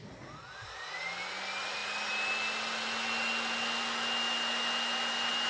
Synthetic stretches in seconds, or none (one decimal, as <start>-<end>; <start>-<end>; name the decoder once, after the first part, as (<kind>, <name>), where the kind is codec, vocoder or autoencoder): none